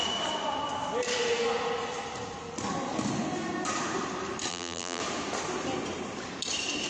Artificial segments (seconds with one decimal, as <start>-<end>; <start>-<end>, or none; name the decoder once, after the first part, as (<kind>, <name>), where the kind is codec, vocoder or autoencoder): 4.5-5.0 (vocoder, BigVGAN v2)